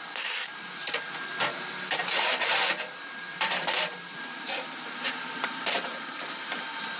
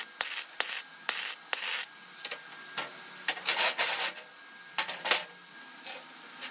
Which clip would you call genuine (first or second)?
second